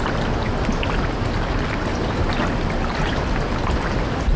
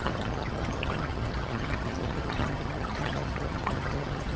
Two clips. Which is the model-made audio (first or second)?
second